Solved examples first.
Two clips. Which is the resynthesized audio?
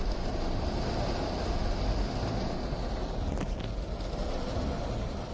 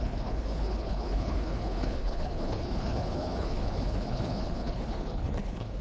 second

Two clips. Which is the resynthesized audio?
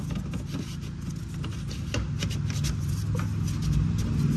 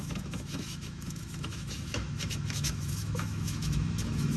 second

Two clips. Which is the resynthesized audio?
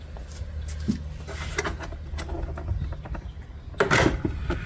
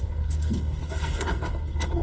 second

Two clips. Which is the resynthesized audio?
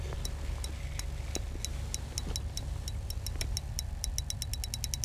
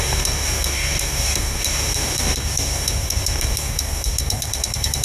second